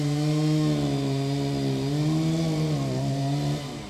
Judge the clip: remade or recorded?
recorded